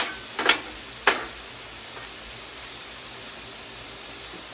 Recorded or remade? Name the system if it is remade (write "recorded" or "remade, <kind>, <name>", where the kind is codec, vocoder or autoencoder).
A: recorded